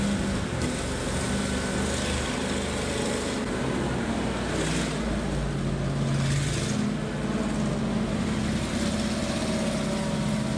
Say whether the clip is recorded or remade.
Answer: recorded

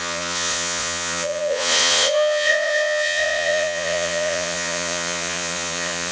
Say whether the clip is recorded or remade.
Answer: remade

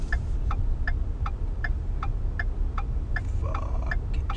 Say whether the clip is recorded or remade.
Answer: recorded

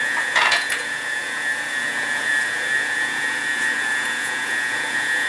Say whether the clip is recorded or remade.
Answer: remade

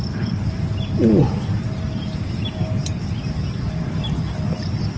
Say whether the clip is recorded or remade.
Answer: recorded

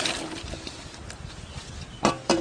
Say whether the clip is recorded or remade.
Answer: recorded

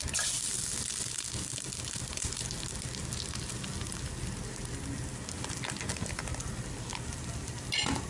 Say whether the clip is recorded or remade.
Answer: recorded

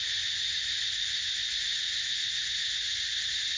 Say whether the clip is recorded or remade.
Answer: recorded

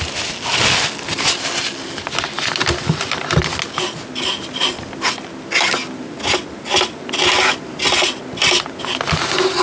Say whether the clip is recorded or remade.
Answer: recorded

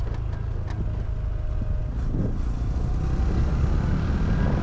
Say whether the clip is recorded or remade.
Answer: recorded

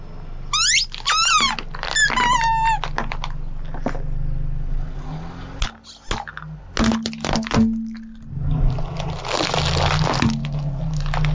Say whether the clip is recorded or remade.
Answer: recorded